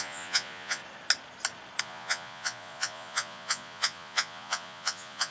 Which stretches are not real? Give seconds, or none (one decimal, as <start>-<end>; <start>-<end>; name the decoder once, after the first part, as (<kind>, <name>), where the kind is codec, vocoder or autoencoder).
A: 0.0-0.8 (vocoder, Vocos); 1.8-5.3